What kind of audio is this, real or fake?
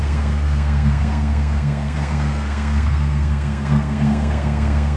fake